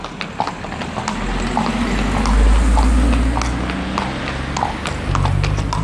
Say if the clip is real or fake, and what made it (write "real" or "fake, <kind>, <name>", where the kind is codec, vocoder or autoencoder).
real